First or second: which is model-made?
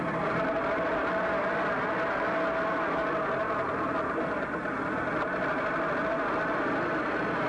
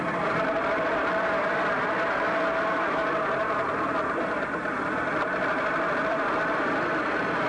second